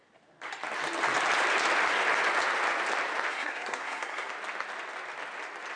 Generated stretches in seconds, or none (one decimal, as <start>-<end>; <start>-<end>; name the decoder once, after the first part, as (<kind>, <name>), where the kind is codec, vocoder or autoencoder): 3.3-4.3 (codec, SNAC)